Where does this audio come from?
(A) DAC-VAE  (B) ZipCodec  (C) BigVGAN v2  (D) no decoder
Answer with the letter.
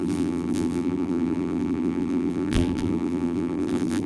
C